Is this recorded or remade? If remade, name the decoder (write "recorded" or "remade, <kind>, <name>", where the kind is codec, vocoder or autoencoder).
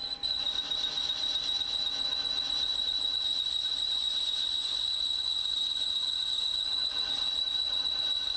recorded